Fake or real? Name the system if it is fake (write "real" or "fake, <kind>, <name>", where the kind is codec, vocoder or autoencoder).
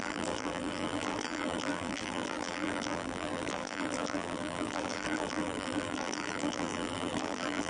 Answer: fake, vocoder, BigVGAN v2